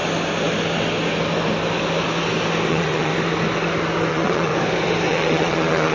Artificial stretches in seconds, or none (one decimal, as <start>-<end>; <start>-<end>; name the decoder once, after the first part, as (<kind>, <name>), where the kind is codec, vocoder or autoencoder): 2.7-3.1 (vocoder, WaveNeXt); 4.1-4.5; 5.1-5.9